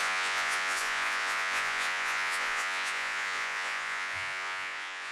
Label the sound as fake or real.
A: fake